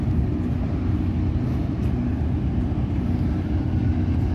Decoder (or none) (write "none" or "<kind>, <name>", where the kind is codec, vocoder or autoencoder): none